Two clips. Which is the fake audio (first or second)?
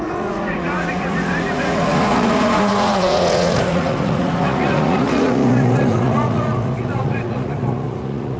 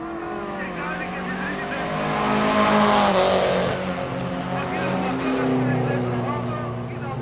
first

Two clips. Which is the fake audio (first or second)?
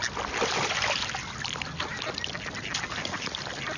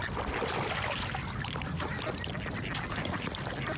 second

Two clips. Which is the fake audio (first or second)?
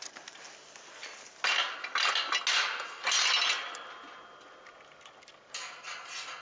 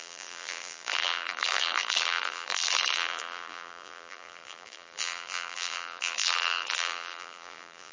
second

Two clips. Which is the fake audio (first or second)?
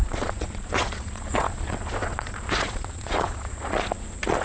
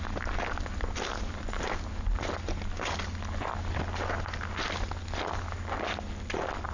first